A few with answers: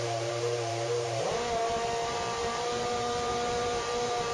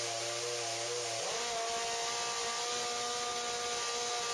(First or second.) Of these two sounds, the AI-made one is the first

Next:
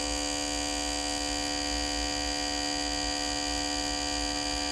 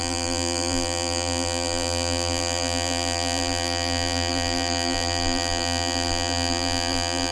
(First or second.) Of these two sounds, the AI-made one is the second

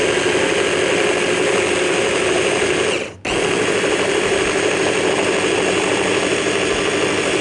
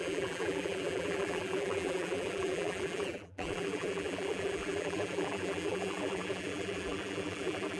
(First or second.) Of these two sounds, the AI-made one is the second